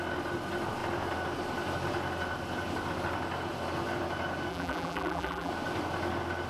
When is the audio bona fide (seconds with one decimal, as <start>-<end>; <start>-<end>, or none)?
0.0-4.5; 5.5-6.5